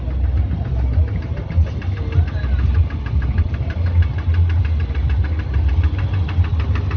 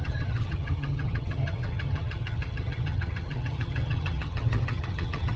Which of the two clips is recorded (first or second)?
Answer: first